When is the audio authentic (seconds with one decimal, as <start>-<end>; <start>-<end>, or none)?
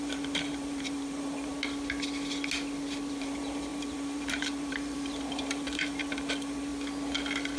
1.5-3.1; 6.7-7.6